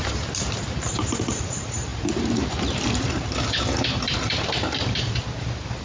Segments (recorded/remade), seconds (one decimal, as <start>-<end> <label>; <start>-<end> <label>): 0.0-5.8 remade